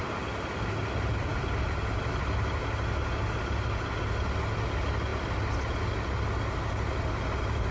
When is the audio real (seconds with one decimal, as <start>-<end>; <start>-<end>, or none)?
0.0-7.7

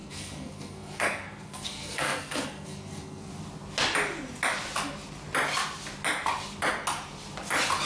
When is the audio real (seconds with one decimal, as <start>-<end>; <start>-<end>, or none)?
3.3-7.9

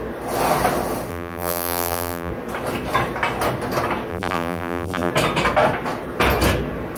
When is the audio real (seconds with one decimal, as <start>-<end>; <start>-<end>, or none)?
0.0-1.1; 2.3-4.1; 5.1-7.0

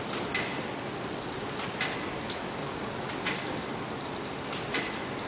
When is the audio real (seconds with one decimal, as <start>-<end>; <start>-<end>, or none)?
0.0-2.6; 3.1-5.3

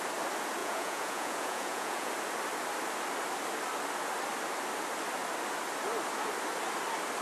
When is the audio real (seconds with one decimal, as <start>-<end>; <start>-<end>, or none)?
0.0-0.6; 2.1-7.2

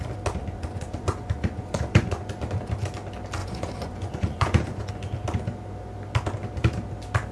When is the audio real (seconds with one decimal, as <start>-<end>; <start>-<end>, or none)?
0.0-0.4; 2.2-3.4; 4.9-7.3

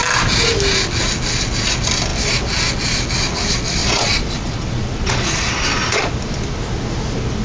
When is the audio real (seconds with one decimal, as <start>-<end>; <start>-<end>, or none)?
0.0-3.8; 6.1-7.4